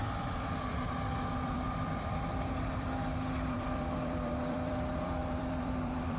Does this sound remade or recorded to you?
remade